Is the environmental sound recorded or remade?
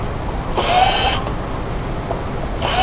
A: recorded